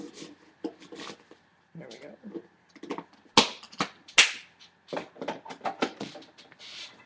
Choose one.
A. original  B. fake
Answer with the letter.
A